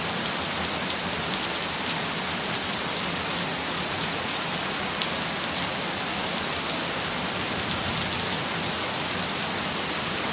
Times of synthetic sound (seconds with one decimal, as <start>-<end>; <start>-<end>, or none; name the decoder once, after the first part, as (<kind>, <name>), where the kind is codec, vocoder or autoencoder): 3.5-4.6 (vocoder, Vocos)